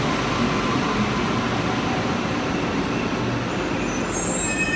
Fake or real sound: real